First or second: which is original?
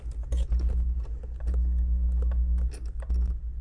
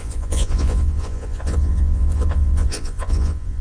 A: first